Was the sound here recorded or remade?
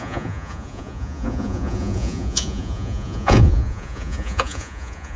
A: remade